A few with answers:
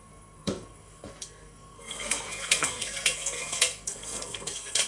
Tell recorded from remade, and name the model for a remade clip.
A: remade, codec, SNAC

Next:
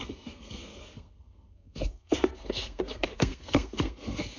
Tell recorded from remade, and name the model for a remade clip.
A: remade, codec, SNAC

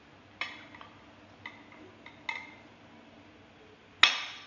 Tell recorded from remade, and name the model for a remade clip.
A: recorded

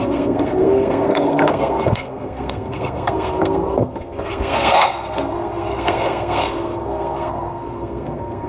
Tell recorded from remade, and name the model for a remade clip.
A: remade, codec, SNAC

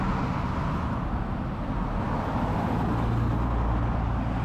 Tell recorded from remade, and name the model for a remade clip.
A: recorded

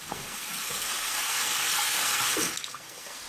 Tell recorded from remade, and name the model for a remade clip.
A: remade, codec, SNAC